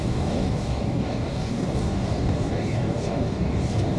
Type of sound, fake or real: fake